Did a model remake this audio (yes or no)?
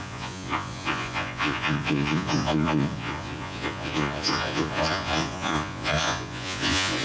yes